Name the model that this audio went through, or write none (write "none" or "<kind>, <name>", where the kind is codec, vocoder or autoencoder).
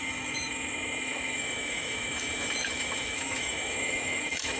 autoencoder, DAC-VAE